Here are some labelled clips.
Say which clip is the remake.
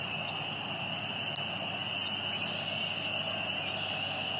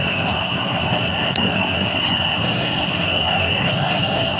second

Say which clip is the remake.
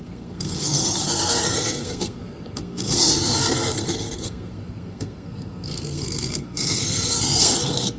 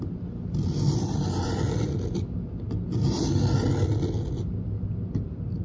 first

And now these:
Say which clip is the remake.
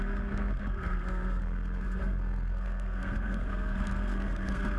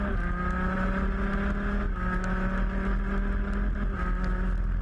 first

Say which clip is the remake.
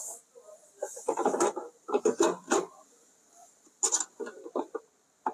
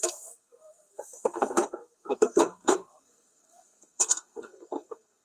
second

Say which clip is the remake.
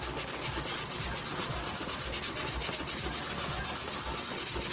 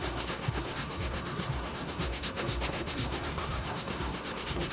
second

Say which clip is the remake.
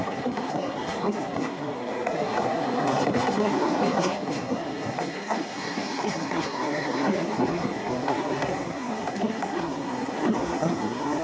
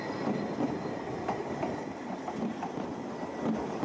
first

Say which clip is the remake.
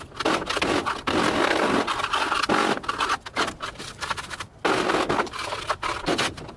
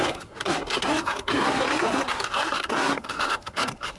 second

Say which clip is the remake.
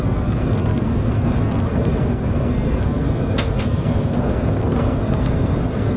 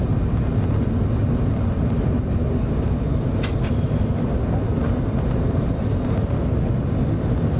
first